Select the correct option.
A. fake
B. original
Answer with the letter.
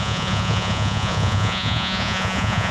A